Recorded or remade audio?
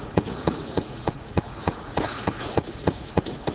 remade